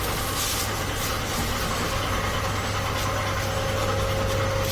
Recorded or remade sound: recorded